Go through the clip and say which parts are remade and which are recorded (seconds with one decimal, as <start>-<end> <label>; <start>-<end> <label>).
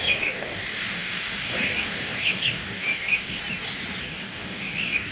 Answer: 0.0-3.4 remade; 3.4-4.0 recorded; 4.0-5.1 remade